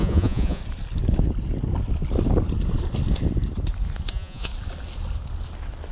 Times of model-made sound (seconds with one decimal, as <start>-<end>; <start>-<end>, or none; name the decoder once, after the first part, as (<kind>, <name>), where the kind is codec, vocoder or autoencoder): 0.0-0.6 (vocoder, Vocos); 4.1-4.5